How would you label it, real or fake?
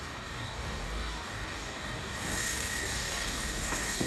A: fake